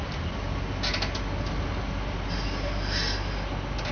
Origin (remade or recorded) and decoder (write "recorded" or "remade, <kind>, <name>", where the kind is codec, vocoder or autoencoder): recorded